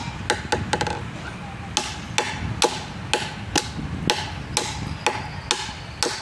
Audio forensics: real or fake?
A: real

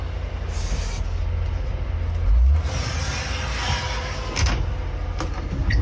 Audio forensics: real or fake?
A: real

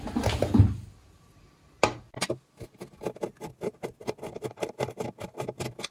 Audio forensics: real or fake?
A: real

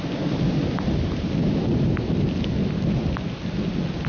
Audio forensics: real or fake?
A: real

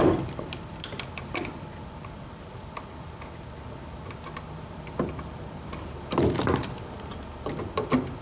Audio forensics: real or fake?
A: real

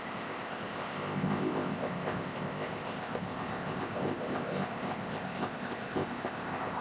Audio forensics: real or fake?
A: fake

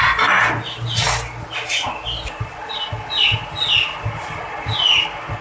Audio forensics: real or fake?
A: real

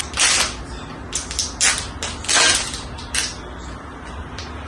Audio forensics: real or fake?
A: real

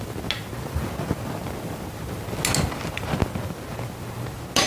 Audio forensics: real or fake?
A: real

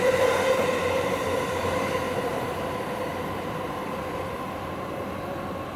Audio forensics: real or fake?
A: real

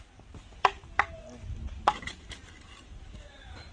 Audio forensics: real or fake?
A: real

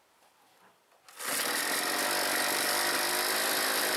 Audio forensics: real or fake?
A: real